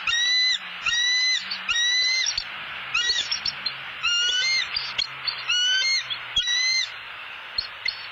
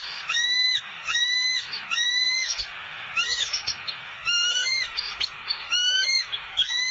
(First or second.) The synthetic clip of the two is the second